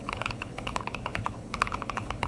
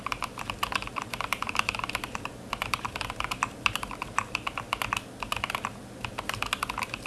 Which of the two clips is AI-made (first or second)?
first